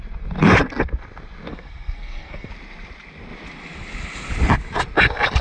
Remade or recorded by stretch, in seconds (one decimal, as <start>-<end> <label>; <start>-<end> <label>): 0.0-1.5 recorded; 1.5-2.5 remade; 2.5-5.4 recorded